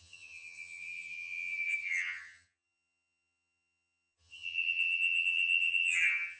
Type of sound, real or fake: fake